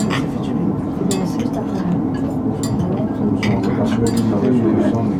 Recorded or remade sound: recorded